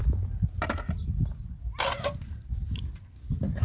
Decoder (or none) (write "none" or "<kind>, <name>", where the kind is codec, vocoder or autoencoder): none